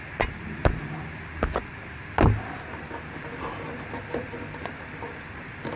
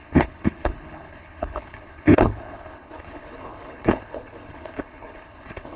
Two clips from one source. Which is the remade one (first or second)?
second